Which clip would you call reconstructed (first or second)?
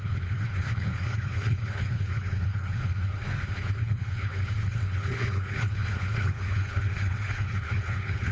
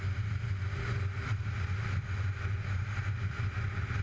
first